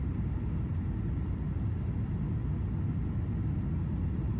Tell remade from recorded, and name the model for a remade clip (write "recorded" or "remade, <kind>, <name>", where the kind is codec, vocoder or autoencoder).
recorded